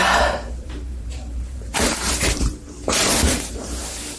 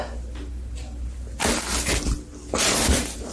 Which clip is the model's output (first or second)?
first